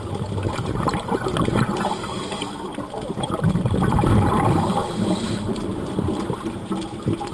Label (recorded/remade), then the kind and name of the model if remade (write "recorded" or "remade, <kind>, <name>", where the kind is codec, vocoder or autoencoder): remade, vocoder, BigVGAN v2